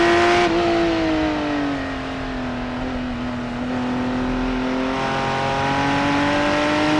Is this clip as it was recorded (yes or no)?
yes